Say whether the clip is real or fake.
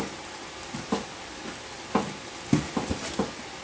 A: real